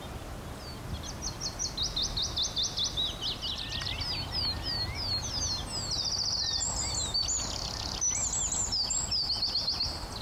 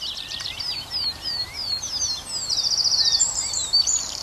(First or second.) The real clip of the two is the first